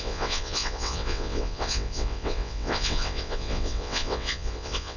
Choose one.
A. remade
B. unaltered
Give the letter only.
A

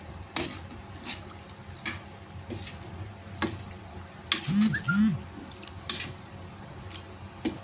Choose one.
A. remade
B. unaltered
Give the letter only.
B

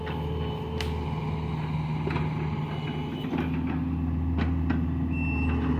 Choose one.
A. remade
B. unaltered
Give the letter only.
B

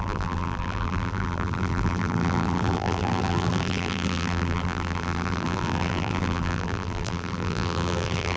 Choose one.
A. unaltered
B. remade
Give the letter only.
B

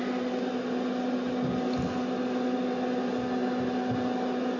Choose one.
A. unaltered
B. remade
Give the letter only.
A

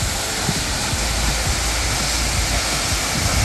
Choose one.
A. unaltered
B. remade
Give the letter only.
A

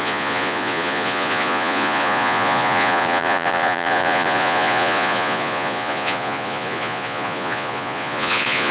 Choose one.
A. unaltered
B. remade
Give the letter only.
B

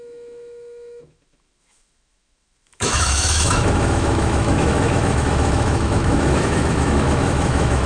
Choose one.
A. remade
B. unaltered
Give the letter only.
A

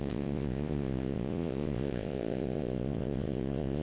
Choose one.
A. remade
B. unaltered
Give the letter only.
A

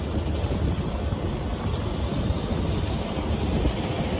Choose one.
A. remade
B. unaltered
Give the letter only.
B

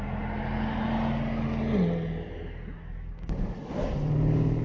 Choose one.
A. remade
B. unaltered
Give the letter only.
B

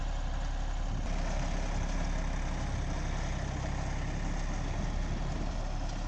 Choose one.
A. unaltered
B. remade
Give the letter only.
A